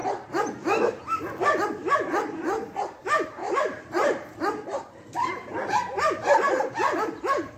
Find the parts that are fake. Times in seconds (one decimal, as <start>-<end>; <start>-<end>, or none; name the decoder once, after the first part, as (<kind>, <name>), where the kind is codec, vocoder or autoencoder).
1.8-3.0 (vocoder, BigVGAN v2); 3.4-6.7